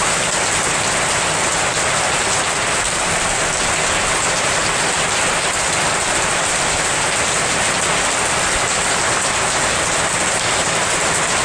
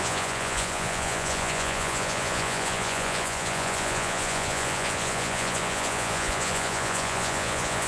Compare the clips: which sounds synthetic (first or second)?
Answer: second